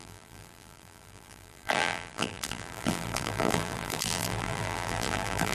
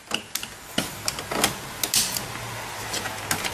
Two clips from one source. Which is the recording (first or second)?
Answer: second